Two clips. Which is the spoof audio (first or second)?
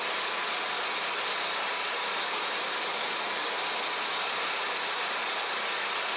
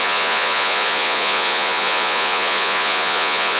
second